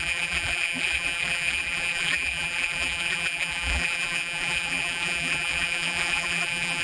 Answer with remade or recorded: remade